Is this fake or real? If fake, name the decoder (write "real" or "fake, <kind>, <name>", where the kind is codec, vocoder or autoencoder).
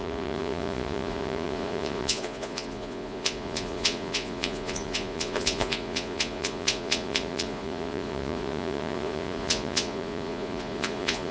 fake, vocoder, Vocos